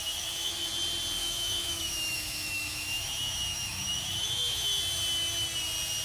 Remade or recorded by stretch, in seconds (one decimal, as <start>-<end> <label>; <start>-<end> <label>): 0.0-0.7 remade; 0.7-1.2 recorded; 1.2-4.8 remade; 4.8-6.0 recorded

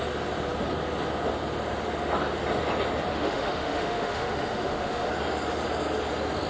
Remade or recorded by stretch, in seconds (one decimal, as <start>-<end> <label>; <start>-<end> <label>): 0.0-3.1 recorded; 3.1-5.1 remade; 5.1-6.5 recorded

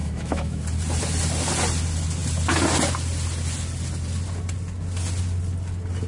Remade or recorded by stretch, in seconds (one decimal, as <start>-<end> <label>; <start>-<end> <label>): 0.0-0.6 remade; 0.6-6.1 recorded